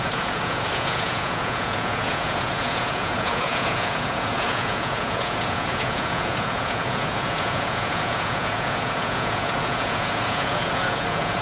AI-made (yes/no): yes